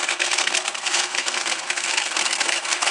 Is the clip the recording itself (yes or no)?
no